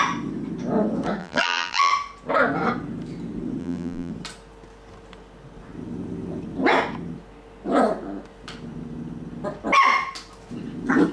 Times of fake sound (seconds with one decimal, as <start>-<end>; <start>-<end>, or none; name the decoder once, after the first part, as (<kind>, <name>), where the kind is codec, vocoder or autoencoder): 1.2-1.9 (vocoder, BigVGAN v2); 3.6-4.1